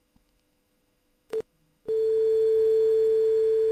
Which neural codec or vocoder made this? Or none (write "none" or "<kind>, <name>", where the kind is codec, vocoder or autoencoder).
autoencoder, DAC-VAE